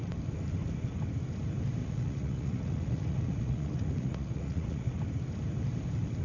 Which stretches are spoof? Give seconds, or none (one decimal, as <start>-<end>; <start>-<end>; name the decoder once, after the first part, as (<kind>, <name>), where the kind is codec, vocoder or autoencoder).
1.8-4.9 (vocoder, Vocos)